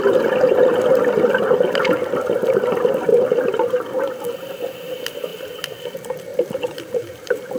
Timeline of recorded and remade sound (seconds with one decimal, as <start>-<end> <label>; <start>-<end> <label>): 0.0-3.1 recorded; 3.1-4.0 remade; 4.0-6.3 recorded; 6.3-7.6 remade